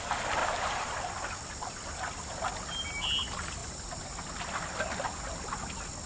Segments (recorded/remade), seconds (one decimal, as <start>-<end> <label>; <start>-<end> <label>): 0.0-0.4 recorded; 0.4-1.1 remade; 1.1-6.1 recorded